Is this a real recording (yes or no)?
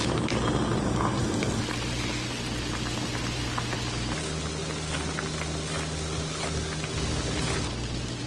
yes